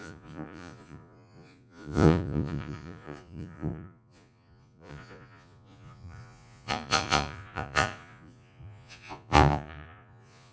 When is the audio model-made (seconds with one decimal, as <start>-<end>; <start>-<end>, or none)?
0.0-10.5